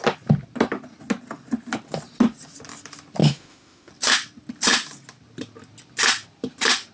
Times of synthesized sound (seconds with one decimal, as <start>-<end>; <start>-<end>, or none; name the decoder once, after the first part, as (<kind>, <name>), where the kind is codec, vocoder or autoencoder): 3.2-3.9 (autoencoder, DAC-VAE)